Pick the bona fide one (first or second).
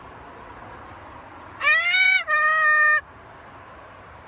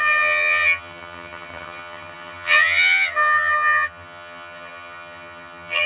first